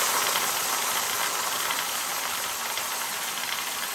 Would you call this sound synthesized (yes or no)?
no